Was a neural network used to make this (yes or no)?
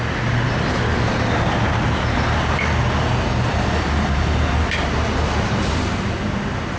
no